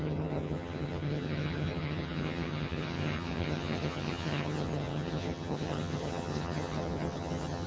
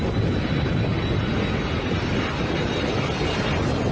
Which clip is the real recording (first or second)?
second